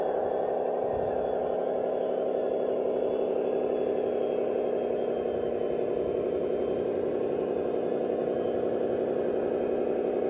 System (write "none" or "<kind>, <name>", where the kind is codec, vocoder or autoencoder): none